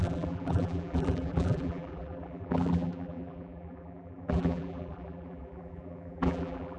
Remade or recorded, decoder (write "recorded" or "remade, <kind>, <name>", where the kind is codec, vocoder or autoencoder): remade, vocoder, BigVGAN v2